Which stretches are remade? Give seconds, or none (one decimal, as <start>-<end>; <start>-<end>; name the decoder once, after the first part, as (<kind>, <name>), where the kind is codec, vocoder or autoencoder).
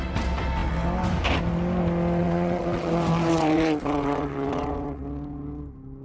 2.2-2.9 (vocoder, WaveNeXt); 3.3-5.0